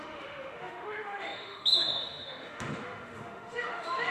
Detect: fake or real fake